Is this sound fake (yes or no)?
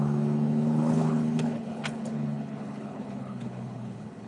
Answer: yes